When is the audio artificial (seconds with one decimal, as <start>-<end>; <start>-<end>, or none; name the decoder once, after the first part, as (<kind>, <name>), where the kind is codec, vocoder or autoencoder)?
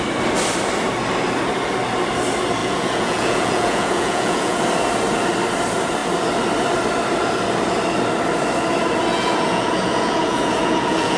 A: 2.6-4.6 (vocoder, Vocos); 9.1-11.2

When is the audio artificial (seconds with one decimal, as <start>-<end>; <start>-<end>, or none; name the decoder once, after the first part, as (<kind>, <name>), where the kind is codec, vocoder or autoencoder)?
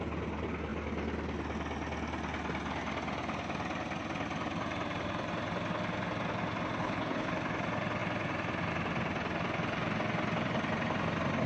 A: 6.8-7.3 (codec, HILCodec)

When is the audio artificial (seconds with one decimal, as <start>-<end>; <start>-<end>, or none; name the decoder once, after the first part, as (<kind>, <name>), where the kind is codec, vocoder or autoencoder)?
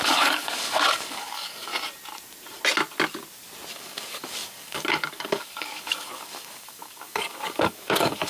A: 0.0-1.7 (codec, DAC); 3.7-8.3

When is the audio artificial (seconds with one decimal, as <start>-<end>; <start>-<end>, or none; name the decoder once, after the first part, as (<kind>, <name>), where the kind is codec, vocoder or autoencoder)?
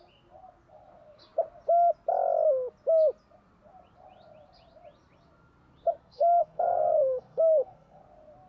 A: 6.0-8.0 (codec, SNAC)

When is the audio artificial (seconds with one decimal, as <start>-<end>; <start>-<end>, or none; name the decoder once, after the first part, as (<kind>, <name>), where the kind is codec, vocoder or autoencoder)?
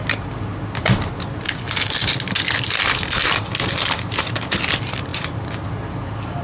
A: none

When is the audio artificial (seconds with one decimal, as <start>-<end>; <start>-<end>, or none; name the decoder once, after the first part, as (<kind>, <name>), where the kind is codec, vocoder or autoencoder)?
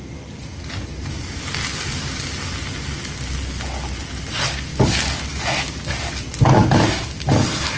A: none